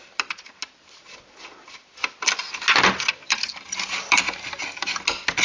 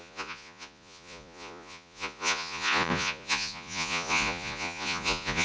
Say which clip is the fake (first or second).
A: second